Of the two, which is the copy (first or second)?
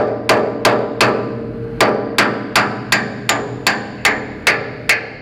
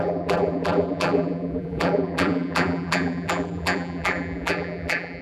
second